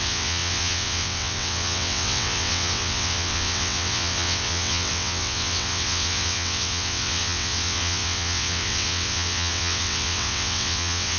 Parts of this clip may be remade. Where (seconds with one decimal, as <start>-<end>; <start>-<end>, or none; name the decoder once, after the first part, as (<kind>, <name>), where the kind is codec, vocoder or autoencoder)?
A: 0.0-11.2 (vocoder, WaveNeXt)